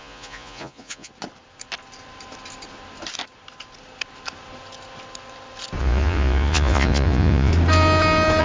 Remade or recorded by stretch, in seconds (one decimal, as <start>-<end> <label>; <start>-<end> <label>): 0.0-1.1 remade; 1.1-5.8 recorded; 5.8-7.5 remade; 7.5-8.4 recorded